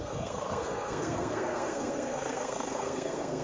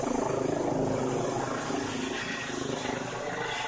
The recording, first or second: second